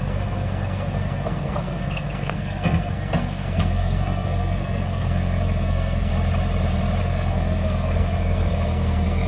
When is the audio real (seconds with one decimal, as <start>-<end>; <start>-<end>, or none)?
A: 6.1-7.0